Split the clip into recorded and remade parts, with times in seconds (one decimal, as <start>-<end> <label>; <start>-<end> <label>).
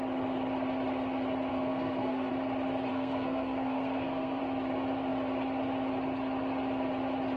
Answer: 0.0-1.5 recorded; 1.5-2.3 remade; 2.3-2.9 recorded; 2.9-4.4 remade; 4.4-7.4 recorded